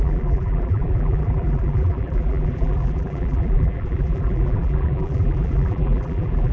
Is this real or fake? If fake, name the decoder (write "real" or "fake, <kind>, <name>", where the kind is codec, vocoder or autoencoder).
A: fake, vocoder, BigVGAN v2